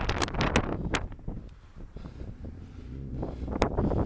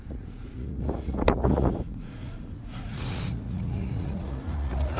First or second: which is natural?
first